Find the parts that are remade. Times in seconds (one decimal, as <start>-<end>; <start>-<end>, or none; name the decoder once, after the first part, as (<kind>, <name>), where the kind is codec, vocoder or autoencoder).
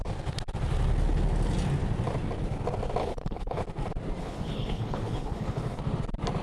3.0-3.6 (codec, HILCodec); 4.2-5.8